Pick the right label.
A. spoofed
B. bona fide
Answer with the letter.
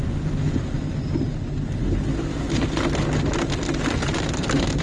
B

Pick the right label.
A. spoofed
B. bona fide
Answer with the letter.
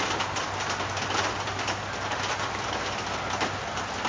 B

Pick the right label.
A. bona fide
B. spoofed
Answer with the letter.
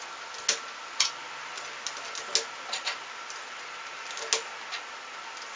A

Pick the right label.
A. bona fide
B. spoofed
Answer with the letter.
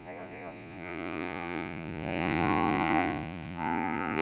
B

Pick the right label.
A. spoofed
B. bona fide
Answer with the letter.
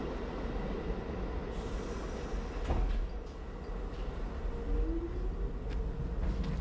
B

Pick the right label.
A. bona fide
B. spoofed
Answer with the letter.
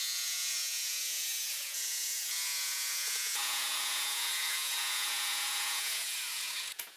B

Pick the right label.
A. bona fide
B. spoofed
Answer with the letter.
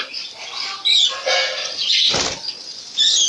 A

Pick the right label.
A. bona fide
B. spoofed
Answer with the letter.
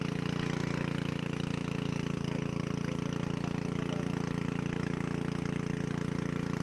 A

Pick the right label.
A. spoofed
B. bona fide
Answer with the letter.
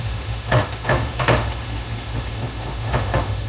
A